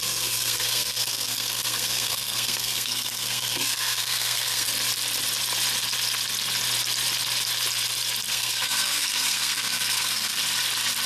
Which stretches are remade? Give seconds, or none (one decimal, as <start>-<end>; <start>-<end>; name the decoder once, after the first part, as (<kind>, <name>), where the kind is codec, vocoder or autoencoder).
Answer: 0.0-4.7 (codec, SNAC); 8.3-10.4